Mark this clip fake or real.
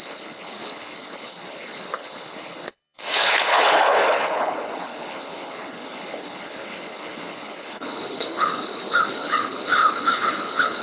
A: fake